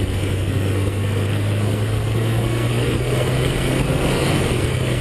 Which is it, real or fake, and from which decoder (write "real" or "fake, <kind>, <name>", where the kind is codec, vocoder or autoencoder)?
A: fake, codec, SNAC